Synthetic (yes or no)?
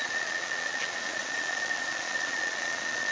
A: yes